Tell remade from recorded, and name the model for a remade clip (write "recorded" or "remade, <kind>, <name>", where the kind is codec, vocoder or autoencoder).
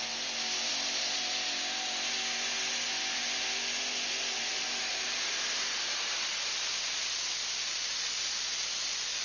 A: recorded